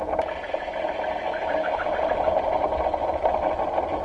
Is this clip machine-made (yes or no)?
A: no